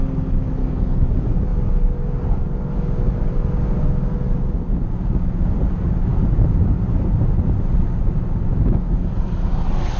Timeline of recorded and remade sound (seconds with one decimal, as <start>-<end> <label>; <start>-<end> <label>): 0.0-0.6 recorded; 0.6-1.1 remade; 1.1-10.0 recorded